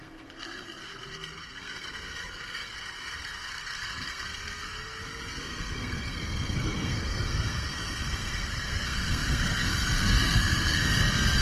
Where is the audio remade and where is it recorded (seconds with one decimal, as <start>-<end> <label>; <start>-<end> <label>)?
0.0-11.4 remade

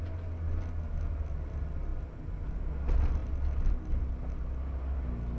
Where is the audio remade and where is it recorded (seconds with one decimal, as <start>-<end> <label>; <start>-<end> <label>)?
0.0-5.4 recorded

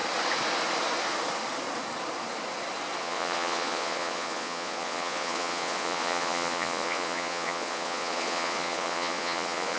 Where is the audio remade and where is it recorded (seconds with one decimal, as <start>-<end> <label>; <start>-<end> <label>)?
0.0-3.0 recorded; 3.0-9.8 remade